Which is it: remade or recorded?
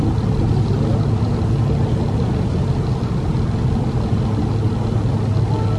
recorded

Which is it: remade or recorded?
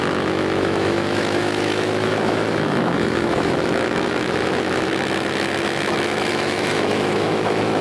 remade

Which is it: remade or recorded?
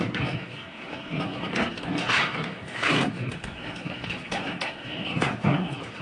remade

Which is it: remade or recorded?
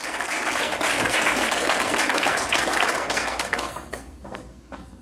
remade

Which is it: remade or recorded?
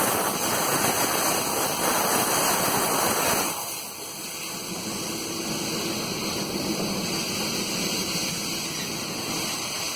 recorded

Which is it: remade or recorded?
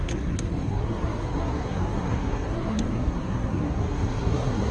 remade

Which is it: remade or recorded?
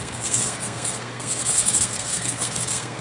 remade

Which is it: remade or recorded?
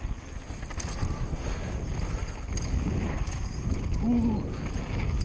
recorded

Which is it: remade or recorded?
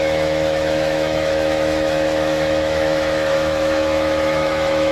remade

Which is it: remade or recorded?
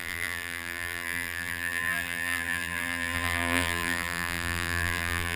remade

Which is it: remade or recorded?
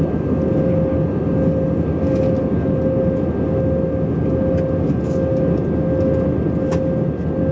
recorded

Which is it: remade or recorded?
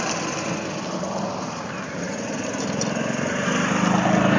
recorded